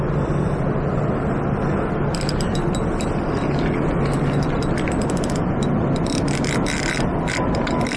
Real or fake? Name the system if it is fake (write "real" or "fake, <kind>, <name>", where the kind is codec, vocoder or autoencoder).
real